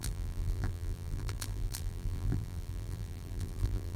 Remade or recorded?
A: remade